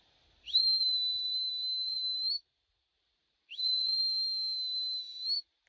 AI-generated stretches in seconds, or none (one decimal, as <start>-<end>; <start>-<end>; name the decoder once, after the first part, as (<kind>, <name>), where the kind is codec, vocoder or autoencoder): 0.6-4.0 (vocoder, BigVGAN v2)

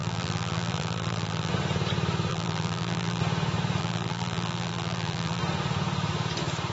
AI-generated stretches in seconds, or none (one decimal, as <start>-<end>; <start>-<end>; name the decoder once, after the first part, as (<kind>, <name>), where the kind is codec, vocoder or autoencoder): 0.0-1.5 (vocoder, BigVGAN v2); 2.3-3.2; 3.8-5.4

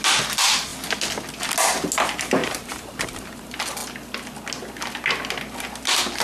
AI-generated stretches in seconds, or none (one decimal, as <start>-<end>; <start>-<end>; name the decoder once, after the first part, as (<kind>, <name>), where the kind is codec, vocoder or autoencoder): 2.4-3.4 (vocoder, BigVGAN v2)

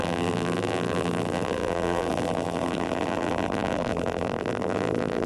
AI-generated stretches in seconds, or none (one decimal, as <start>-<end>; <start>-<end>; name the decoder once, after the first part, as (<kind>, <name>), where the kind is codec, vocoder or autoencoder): 0.0-5.3 (vocoder, BigVGAN v2)